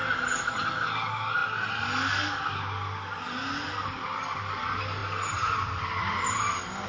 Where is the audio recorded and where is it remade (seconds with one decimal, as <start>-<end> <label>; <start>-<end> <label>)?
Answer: 0.0-6.9 recorded